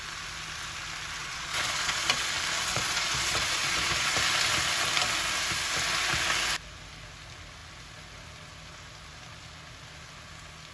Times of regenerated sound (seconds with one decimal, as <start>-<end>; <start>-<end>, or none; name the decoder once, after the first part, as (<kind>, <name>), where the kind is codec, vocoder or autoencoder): 1.2-2.3 (vocoder, Vocos); 2.7-4.1